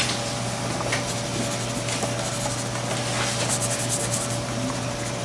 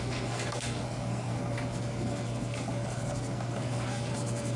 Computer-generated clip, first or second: second